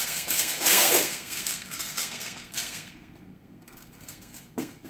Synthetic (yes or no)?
yes